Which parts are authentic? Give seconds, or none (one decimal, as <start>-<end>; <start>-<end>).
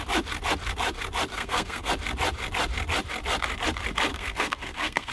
0.0-1.3; 1.9-4.1